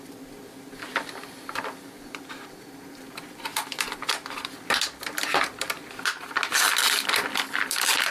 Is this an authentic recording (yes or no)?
yes